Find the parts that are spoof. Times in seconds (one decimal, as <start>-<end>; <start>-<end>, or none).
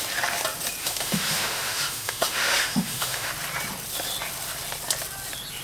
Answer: 0.8-3.3